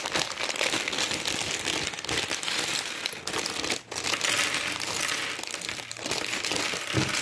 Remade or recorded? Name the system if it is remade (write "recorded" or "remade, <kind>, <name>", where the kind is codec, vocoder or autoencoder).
recorded